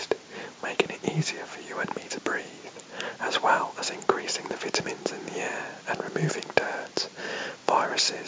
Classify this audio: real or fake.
real